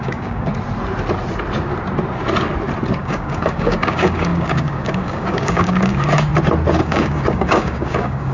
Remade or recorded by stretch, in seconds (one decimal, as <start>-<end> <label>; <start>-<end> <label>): 0.0-0.5 remade; 0.5-3.0 recorded; 3.0-6.3 remade; 6.3-6.8 recorded; 6.8-8.3 remade